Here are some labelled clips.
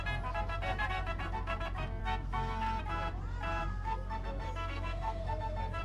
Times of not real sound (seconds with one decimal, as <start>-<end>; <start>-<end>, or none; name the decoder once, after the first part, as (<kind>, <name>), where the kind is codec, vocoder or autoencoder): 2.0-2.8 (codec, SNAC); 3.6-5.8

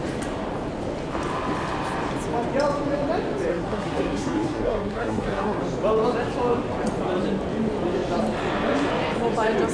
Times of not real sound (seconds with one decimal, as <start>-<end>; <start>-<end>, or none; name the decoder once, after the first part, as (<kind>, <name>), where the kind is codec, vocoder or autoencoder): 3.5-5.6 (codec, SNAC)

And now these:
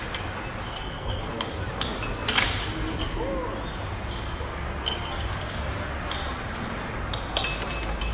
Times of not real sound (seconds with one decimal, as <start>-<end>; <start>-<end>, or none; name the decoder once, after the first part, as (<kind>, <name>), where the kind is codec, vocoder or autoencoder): 0.7-1.3 (codec, SNAC)

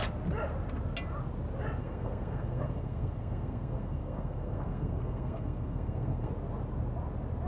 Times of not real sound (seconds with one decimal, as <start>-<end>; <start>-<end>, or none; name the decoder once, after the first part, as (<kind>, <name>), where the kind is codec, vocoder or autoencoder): 1.8-6.3 (codec, SNAC)

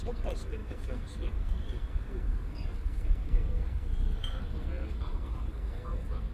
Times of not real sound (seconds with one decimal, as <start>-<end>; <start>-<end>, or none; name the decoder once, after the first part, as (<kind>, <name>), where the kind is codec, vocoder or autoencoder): 0.0-6.3 (codec, SNAC)

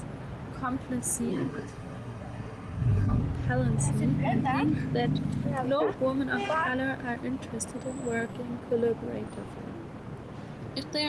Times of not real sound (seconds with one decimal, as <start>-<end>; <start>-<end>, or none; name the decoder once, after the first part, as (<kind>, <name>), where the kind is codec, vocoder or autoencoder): 1.3-3.2 (codec, SNAC)

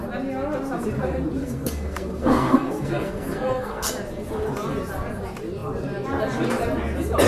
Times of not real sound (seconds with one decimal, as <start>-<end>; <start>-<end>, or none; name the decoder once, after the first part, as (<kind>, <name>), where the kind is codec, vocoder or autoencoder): 1.4-3.9 (codec, SNAC)